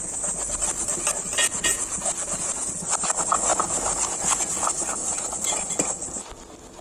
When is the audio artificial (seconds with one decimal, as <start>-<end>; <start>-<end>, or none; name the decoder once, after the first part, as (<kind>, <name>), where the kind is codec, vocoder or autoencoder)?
1.6-2.7 (vocoder, Vocos); 5.0-5.6